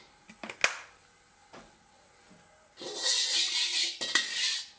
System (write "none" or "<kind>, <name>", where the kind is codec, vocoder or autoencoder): none